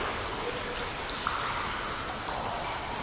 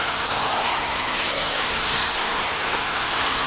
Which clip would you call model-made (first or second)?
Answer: second